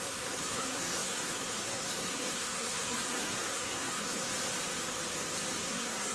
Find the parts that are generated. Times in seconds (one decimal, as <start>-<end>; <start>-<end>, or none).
0.0-4.3; 5.6-6.1

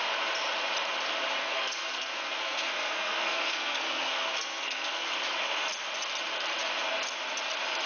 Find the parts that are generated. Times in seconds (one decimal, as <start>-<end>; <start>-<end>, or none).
1.4-5.1

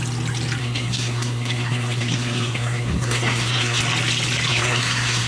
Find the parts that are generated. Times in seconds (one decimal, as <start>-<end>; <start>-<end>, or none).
0.6-3.8; 4.5-5.3

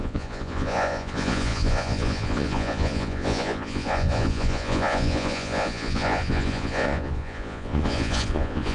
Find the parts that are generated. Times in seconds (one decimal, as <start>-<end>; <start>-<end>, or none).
0.0-8.7

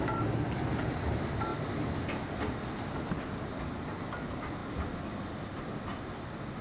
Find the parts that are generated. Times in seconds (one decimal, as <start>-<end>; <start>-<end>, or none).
1.5-2.8; 4.6-5.2

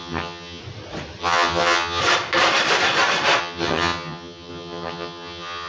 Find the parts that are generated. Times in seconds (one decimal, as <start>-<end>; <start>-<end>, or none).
0.0-0.6; 1.2-2.0; 3.4-5.7

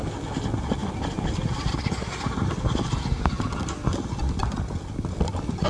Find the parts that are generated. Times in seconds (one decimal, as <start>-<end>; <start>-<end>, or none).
none